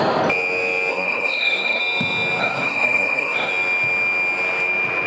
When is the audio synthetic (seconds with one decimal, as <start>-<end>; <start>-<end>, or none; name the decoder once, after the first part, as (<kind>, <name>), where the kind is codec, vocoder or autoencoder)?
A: 0.9-1.8 (codec, SNAC); 2.4-3.5